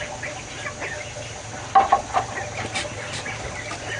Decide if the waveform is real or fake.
real